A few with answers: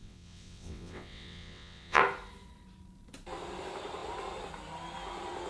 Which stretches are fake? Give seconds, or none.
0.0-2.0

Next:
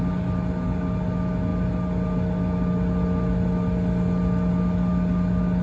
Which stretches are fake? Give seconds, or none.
none

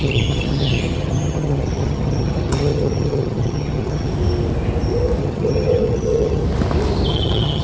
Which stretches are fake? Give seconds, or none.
0.0-4.1; 5.2-6.4; 7.1-7.6

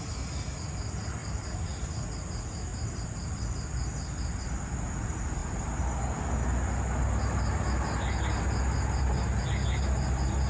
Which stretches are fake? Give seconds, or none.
1.2-2.2; 2.7-3.4

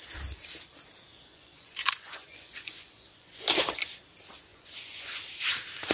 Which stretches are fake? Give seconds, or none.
1.1-4.0; 4.5-5.2

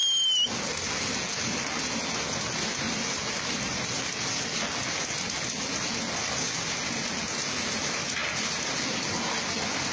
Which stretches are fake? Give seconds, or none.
none

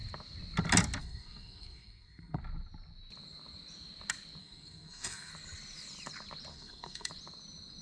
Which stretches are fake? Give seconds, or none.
1.0-2.4; 4.4-5.3; 6.5-7.1

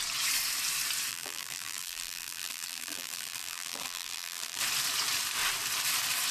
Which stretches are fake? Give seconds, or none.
1.1-4.6